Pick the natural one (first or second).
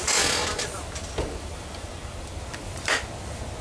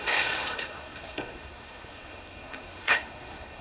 first